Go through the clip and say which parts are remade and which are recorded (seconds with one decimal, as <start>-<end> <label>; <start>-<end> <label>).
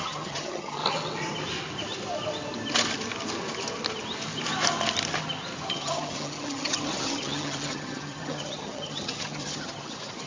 0.0-0.8 remade; 0.8-5.7 recorded; 5.7-10.3 remade